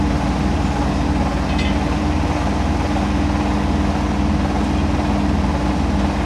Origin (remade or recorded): recorded